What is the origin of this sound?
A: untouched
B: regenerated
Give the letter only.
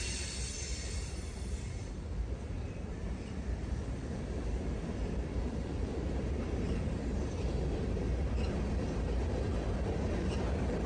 B